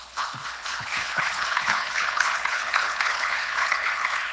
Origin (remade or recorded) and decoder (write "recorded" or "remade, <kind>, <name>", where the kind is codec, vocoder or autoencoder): remade, codec, HILCodec